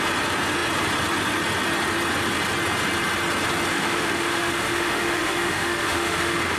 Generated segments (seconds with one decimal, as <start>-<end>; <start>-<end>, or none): 3.7-6.6